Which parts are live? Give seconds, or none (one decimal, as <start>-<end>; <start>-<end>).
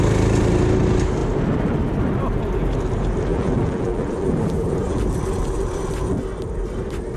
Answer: 0.0-3.3; 5.0-7.2